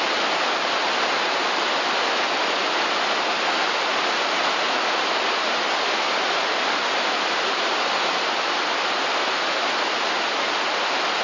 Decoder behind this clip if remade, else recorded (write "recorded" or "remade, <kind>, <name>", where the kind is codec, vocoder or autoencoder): recorded